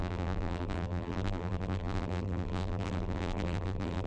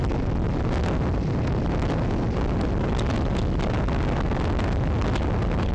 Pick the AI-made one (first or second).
first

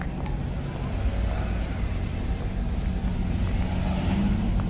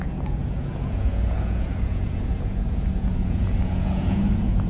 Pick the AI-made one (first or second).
second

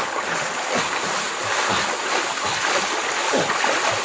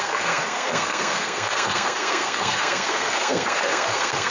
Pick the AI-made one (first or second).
second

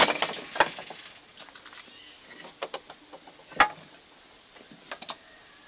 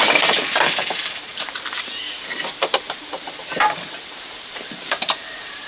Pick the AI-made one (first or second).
second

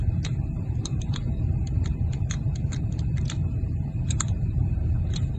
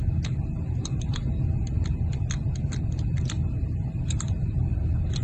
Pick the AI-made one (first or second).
first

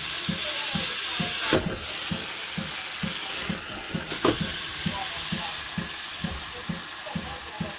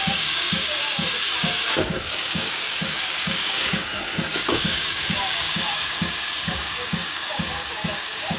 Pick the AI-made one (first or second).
second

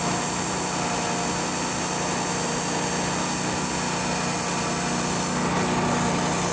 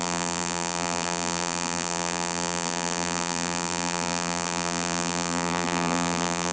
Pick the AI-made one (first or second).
second